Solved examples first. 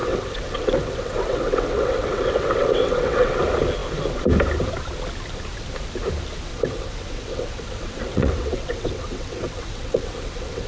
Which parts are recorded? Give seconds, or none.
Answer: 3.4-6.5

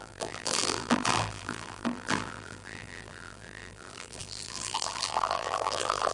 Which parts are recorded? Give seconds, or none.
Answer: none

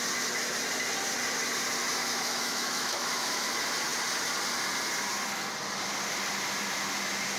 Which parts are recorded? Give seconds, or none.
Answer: 0.0-2.0; 3.5-7.4

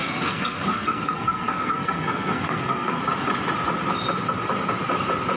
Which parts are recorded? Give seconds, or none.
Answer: 3.0-5.4

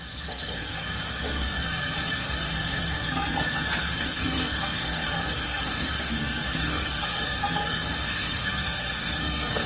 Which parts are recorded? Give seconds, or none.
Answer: none